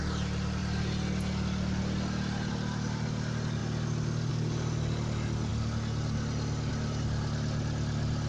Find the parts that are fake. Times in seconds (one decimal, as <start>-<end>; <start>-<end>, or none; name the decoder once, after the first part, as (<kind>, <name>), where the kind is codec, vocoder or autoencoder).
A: none